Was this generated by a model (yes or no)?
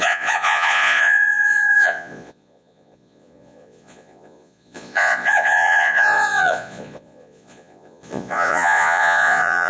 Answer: yes